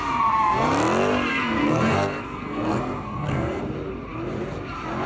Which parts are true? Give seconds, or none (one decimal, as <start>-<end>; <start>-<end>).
0.0-1.3; 3.6-5.1